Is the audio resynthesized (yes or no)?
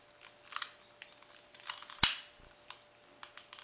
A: no